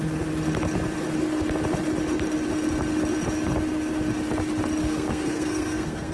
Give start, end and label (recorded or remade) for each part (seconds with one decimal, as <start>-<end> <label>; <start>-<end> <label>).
0.0-4.8 recorded; 4.8-6.1 remade